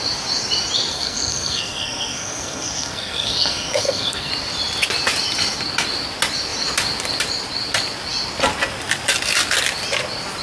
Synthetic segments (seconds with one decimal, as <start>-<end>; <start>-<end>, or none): 0.9-4.3